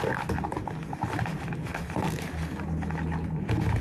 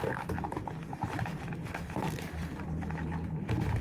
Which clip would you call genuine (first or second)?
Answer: first